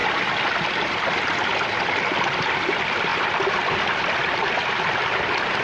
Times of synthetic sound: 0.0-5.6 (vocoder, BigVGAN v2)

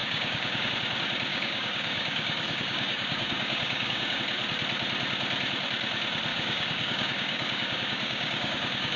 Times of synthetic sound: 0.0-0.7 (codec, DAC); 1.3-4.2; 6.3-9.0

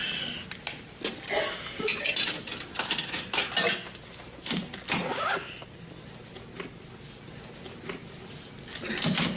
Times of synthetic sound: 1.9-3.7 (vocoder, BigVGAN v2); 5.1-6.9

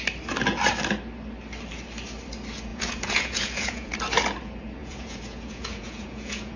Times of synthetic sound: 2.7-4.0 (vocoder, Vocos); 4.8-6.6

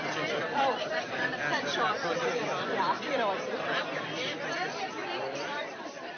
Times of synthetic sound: 0.0-5.0 (vocoder, BigVGAN v2); 5.6-6.2